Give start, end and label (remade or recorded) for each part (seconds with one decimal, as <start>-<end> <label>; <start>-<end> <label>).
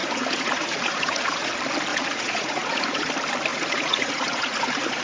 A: 0.0-1.5 remade; 1.5-1.9 recorded; 1.9-3.1 remade; 3.1-3.5 recorded; 3.5-5.0 remade